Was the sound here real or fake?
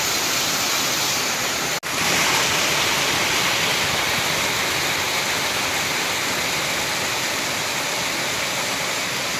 real